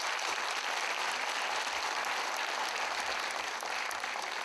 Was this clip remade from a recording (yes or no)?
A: no